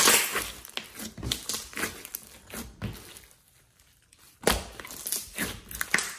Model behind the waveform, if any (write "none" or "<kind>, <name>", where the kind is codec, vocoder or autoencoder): none